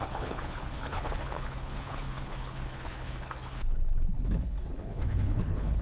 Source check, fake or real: fake